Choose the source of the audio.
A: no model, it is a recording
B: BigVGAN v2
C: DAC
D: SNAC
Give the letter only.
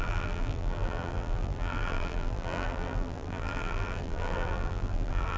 B